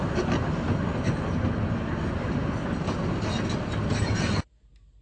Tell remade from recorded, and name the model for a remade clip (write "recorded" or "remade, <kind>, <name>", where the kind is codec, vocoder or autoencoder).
recorded